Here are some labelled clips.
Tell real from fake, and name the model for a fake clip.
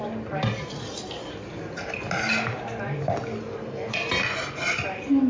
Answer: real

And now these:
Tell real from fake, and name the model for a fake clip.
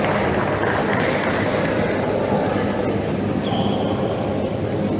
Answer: real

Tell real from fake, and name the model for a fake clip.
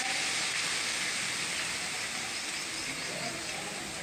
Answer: real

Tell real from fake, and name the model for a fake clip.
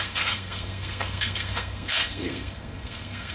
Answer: fake, codec, SNAC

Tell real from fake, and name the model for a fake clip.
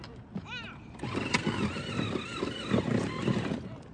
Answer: real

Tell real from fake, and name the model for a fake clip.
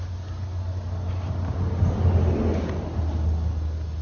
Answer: real